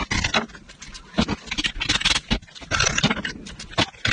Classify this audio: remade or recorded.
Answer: recorded